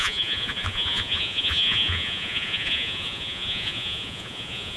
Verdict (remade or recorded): remade